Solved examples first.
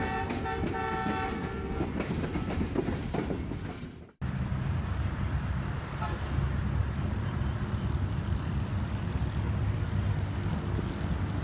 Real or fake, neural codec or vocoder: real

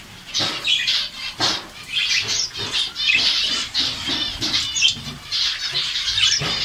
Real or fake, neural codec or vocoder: fake, vocoder, BigVGAN v2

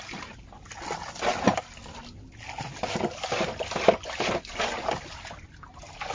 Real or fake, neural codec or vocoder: real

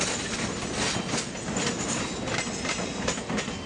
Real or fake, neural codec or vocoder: real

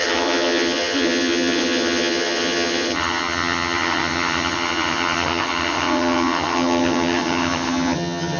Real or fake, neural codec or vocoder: fake, vocoder, HiFi-GAN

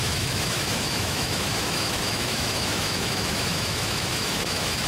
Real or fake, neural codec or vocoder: fake, autoencoder, DAC-VAE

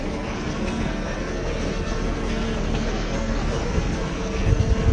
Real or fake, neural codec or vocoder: fake, codec, SNAC